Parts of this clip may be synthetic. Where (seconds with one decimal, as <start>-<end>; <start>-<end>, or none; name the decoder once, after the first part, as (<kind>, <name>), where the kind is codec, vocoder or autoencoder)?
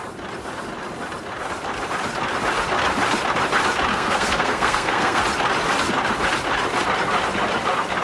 3.9-5.2 (codec, SNAC)